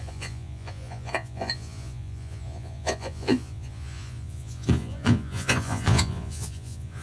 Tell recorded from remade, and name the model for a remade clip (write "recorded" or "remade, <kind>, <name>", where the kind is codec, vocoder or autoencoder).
remade, vocoder, Vocos